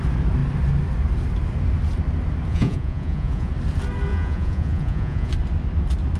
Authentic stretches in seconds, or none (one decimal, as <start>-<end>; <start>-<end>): 0.0-2.5; 3.5-4.1; 5.3-6.2